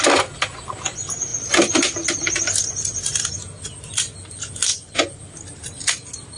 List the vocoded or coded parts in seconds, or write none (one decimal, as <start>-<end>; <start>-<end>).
4.7-5.2